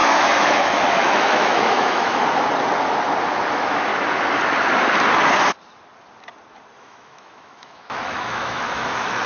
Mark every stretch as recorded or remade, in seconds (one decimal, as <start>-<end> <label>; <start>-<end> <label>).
0.0-2.2 remade; 2.2-3.5 recorded; 3.5-3.9 remade; 3.9-6.8 recorded; 6.8-9.3 remade